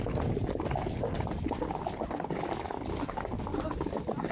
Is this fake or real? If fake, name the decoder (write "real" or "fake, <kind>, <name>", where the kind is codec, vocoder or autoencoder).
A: real